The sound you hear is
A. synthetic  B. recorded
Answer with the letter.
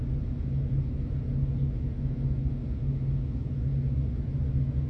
B